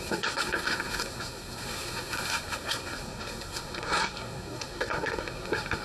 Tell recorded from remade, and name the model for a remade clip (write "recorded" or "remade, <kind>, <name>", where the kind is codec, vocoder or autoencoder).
remade, codec, SNAC